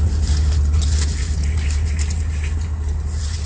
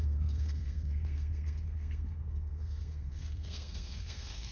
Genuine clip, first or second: first